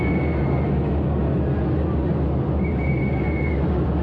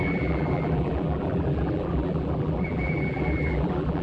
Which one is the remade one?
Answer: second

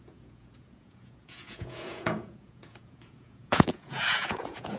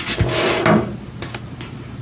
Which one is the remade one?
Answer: first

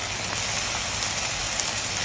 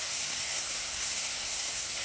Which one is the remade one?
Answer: second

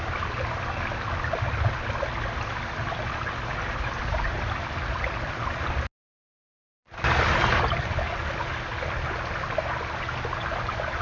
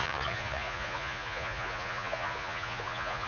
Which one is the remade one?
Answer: second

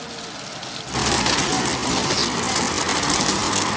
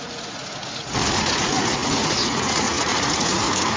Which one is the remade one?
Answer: second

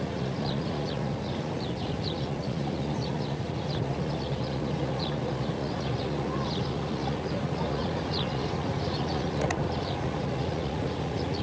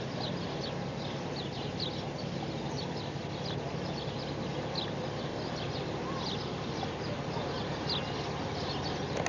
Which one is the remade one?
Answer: first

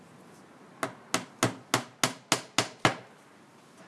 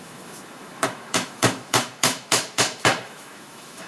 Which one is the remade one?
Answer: second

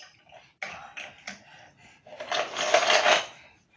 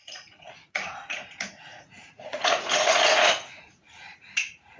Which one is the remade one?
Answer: second